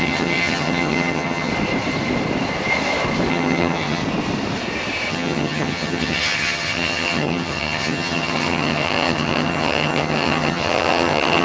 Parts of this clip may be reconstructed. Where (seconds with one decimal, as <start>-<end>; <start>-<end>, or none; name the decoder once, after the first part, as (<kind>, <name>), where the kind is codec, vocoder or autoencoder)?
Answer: 0.0-1.5 (vocoder, HiFi-GAN); 3.3-4.0; 5.1-11.4

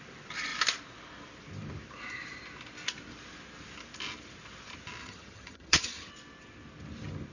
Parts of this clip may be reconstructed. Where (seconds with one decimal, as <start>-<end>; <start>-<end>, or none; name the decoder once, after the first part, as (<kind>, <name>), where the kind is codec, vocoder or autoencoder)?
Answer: 5.0-6.1 (vocoder, HiFi-GAN)

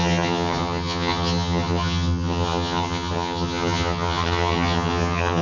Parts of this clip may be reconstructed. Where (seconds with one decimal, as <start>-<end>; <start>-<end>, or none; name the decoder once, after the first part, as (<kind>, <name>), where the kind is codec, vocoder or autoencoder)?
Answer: 0.0-5.4 (vocoder, HiFi-GAN)

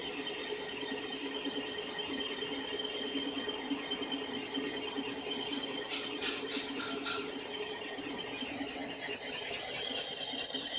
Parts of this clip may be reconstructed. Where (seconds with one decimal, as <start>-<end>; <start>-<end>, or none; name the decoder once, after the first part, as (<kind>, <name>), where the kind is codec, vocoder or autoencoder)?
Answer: none

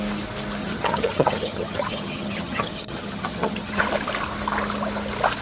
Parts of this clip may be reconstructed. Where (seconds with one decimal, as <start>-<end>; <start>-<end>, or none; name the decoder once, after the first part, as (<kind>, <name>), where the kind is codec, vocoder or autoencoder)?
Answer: 0.6-3.8 (vocoder, HiFi-GAN)

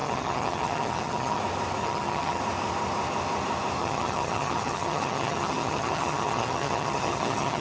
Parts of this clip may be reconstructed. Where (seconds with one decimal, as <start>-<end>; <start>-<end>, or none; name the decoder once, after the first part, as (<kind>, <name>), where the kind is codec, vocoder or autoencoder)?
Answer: 0.0-1.4 (vocoder, HiFi-GAN); 1.8-2.4; 3.8-7.6